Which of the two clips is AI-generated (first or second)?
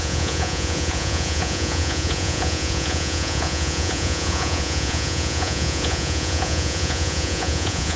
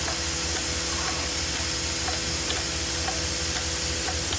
first